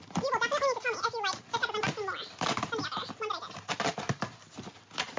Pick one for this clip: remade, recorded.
recorded